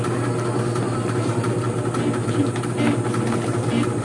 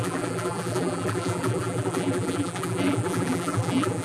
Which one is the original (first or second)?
first